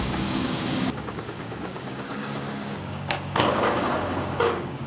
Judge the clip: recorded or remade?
remade